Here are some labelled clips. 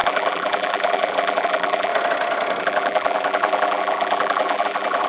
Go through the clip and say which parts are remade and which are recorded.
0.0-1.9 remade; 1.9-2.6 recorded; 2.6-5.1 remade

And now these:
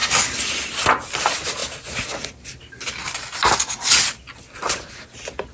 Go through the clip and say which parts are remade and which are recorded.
0.0-5.5 recorded

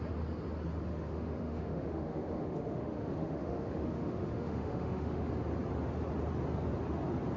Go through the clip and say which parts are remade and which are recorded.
0.0-0.9 recorded; 0.9-5.3 remade; 5.3-7.4 recorded

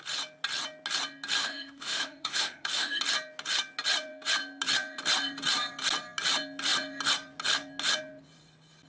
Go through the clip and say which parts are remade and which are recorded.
0.0-1.4 recorded; 1.4-3.0 remade; 3.0-8.9 recorded